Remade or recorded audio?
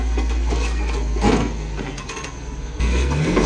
remade